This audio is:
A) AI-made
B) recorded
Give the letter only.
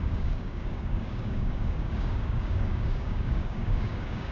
A